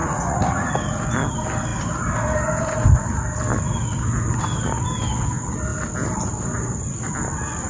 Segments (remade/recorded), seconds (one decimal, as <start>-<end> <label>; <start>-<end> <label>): 0.0-0.7 remade; 0.7-7.7 recorded